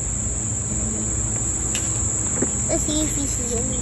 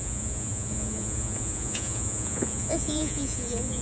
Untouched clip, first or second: first